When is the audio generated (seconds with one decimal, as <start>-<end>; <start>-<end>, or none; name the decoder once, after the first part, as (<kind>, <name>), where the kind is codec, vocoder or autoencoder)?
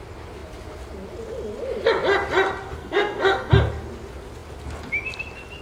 2.8-3.5 (codec, SNAC)